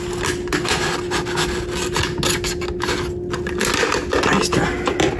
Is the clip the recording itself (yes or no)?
yes